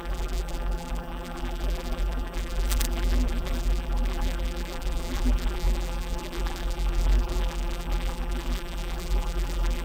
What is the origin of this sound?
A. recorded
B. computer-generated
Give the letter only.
B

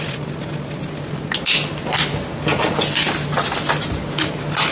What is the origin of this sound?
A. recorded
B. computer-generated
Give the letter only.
A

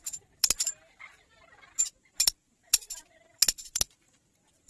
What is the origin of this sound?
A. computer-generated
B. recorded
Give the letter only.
A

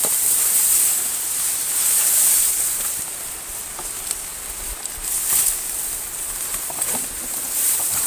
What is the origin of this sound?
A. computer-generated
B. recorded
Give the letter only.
B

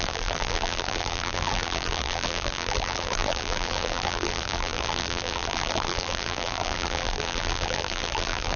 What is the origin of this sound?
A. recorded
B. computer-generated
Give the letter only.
B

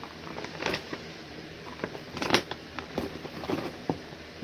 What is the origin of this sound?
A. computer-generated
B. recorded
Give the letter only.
A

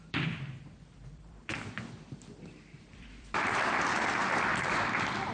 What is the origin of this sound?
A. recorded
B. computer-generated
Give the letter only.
B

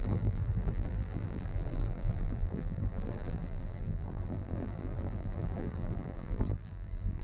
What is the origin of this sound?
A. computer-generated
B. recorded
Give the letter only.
A